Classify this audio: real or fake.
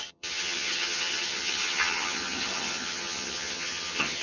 fake